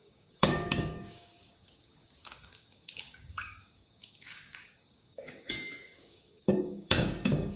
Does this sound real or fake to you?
fake